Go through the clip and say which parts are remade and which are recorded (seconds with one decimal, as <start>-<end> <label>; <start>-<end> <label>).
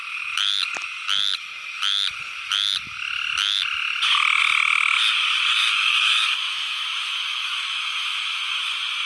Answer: 0.0-5.6 recorded; 5.6-8.6 remade; 8.6-9.1 recorded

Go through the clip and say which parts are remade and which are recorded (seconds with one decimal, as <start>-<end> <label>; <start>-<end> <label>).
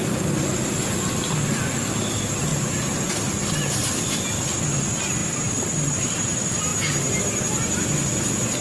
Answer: 0.0-5.2 recorded; 5.2-5.9 remade; 5.9-8.6 recorded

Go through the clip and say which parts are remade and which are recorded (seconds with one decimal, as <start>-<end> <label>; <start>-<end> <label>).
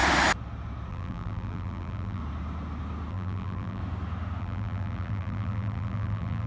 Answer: 0.0-0.9 recorded; 0.9-2.2 remade; 2.2-3.1 recorded; 3.1-3.8 remade; 3.8-4.4 recorded; 4.4-6.5 remade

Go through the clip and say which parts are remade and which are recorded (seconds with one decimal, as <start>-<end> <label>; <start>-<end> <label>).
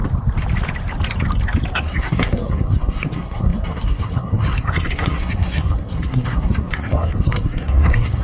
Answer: 0.0-1.7 recorded; 1.7-8.2 remade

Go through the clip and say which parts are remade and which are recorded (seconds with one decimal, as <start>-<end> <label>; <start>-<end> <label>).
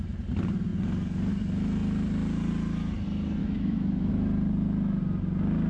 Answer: 0.0-3.4 recorded; 3.4-4.1 remade; 4.1-5.7 recorded